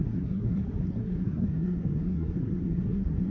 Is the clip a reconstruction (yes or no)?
yes